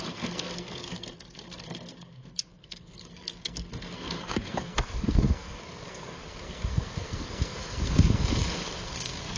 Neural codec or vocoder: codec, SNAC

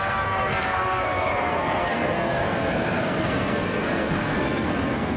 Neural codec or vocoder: codec, SNAC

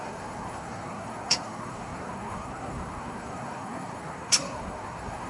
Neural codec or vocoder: codec, SNAC